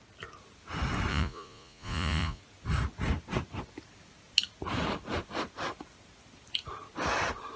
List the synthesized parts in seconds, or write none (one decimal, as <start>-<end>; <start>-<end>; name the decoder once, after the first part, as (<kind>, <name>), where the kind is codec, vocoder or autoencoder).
1.1-2.4 (vocoder, Vocos)